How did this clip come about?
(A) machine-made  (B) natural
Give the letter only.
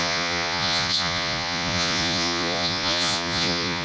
A